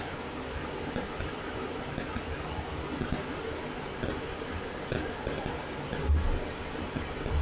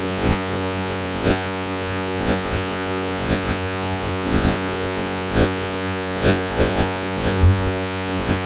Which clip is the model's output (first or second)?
second